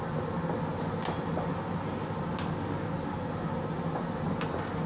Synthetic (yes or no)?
no